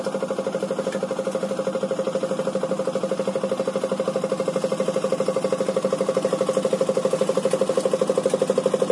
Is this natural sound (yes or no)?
yes